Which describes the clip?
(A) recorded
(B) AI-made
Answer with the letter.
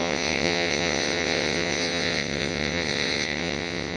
B